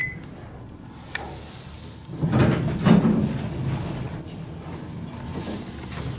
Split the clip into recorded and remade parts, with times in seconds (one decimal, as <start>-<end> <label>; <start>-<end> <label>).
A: 0.0-6.2 recorded